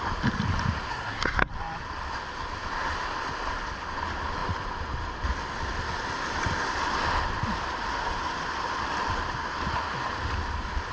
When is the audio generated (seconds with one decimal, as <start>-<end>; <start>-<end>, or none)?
0.9-1.5